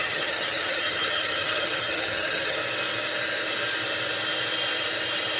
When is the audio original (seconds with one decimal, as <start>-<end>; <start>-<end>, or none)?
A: 2.6-5.4